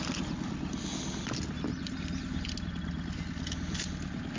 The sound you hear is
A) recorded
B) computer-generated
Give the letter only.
A